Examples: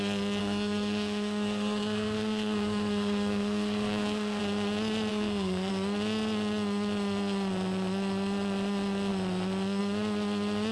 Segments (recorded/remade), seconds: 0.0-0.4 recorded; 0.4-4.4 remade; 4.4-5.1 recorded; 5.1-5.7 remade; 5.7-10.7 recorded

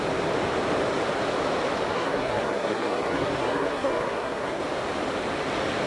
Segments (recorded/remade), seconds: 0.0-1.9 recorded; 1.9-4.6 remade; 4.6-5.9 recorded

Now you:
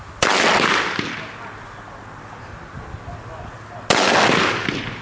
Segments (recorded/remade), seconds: 0.0-5.0 recorded